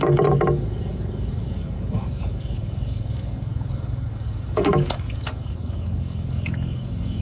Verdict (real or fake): fake